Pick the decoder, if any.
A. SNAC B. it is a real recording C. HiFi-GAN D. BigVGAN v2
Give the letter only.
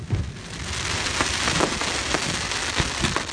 B